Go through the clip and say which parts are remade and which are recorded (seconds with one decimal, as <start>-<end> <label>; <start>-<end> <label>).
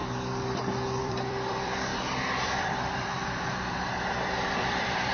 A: 0.0-1.0 recorded; 1.0-1.9 remade; 1.9-2.6 recorded; 2.6-5.1 remade